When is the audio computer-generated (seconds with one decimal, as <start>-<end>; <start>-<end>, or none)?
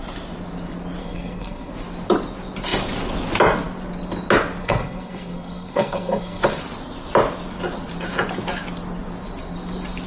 1.0-1.7; 4.6-6.4